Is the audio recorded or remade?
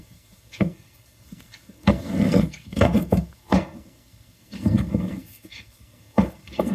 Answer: remade